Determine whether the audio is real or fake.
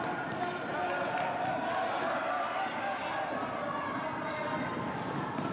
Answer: real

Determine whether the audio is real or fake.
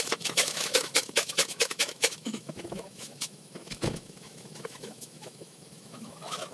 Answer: fake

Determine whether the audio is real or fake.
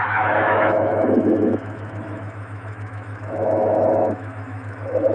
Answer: fake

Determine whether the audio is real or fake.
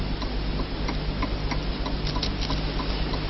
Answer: real